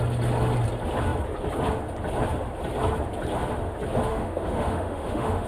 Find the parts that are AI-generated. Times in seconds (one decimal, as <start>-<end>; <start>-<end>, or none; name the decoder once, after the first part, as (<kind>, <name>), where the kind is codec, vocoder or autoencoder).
4.1-5.5 (autoencoder, DAC-VAE)